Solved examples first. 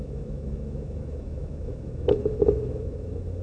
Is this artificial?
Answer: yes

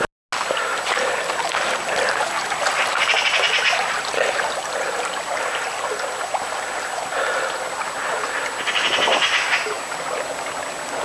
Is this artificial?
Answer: no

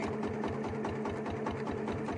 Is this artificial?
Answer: no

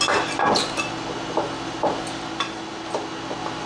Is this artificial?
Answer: no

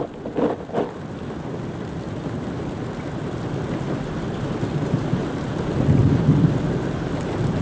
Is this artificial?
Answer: no